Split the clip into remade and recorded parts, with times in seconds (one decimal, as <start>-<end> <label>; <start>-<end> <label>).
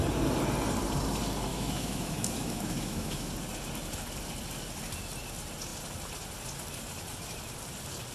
0.0-1.5 recorded; 1.5-3.3 remade; 3.3-8.1 recorded